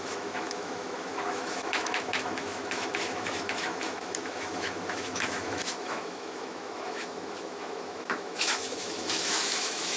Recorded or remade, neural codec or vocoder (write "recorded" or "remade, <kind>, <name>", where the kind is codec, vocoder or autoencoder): remade, autoencoder, DAC-VAE